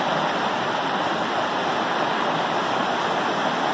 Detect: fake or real real